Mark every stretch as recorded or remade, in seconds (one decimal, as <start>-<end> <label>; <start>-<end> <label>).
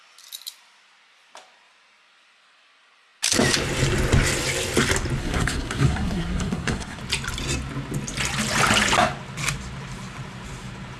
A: 0.0-5.2 recorded; 5.2-7.0 remade; 7.0-11.0 recorded